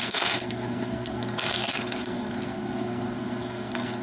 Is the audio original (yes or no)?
no